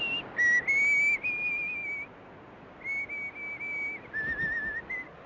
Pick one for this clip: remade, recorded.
recorded